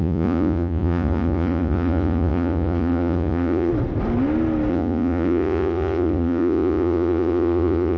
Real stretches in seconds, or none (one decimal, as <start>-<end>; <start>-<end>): 3.7-4.7